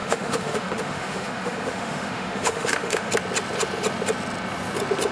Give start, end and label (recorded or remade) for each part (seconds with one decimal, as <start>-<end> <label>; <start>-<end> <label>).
0.0-3.1 remade; 3.1-5.1 recorded